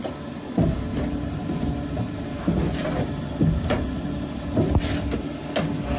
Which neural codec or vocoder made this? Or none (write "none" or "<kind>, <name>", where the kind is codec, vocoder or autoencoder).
none